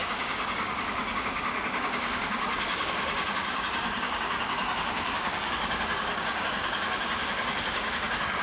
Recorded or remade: remade